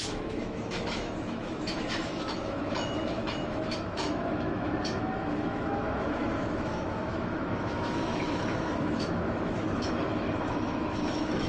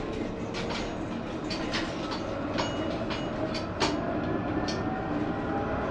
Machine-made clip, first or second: first